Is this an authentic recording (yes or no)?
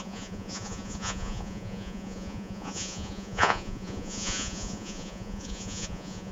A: no